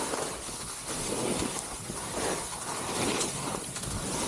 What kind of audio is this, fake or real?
real